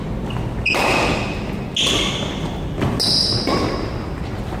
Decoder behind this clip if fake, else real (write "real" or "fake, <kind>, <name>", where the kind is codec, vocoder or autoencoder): real